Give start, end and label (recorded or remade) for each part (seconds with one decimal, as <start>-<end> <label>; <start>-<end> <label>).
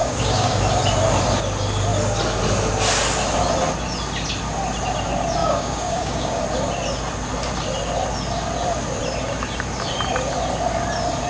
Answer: 0.0-0.6 remade; 0.6-5.4 recorded; 5.4-6.4 remade; 6.4-11.3 recorded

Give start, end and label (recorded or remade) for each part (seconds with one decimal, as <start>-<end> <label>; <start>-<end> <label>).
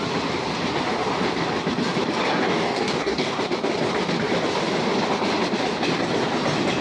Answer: 0.0-2.5 recorded; 2.5-3.3 remade; 3.3-6.8 recorded